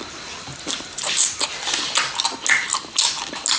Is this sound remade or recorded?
recorded